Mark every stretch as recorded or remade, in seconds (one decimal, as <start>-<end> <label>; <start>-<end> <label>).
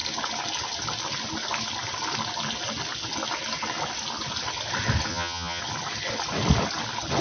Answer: 0.0-5.1 recorded; 5.1-5.6 remade; 5.6-7.2 recorded